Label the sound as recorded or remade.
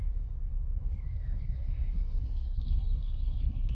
remade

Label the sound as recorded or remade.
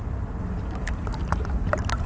recorded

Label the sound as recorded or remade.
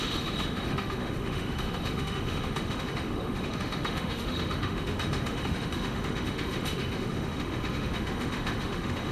remade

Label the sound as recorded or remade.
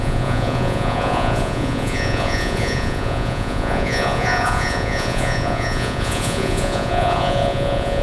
remade